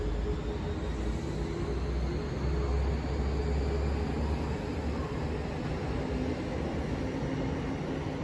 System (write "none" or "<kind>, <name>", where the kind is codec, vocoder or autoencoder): none